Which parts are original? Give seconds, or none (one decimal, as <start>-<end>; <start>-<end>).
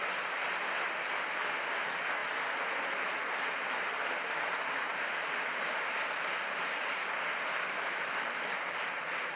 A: none